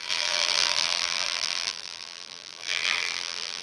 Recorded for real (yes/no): no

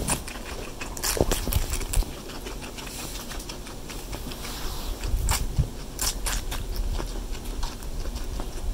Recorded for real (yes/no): yes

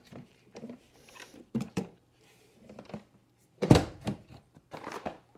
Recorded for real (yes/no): no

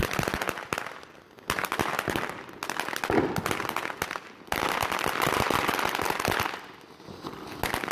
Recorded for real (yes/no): yes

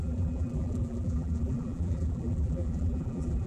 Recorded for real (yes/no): no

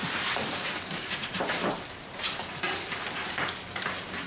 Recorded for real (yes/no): no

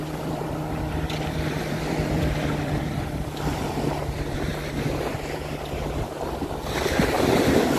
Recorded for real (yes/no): no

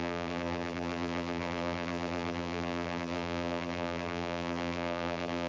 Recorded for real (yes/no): no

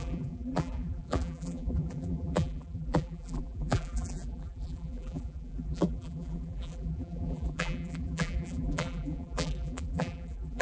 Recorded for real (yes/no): no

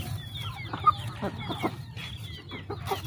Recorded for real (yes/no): yes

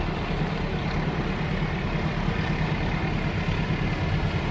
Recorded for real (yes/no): yes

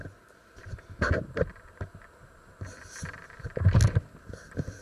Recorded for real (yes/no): no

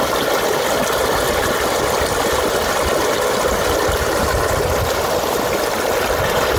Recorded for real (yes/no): yes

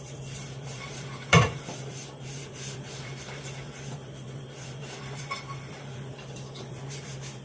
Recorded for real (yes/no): no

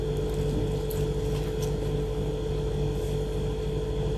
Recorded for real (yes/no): yes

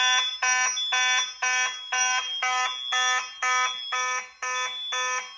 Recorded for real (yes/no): yes